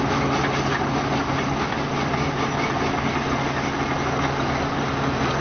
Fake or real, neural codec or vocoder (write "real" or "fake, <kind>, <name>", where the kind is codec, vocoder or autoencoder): real